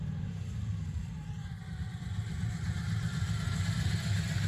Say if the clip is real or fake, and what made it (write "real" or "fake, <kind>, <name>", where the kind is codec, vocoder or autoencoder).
real